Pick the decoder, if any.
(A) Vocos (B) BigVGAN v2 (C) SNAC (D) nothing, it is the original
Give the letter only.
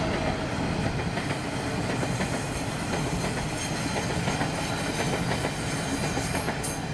D